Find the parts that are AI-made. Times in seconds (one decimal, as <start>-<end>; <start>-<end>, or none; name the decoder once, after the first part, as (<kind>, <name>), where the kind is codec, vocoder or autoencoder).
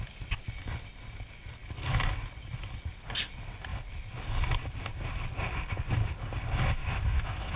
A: 6.8-7.6 (autoencoder, DAC-VAE)